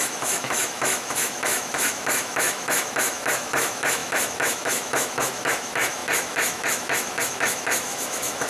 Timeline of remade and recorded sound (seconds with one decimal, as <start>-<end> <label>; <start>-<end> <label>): 0.0-8.5 remade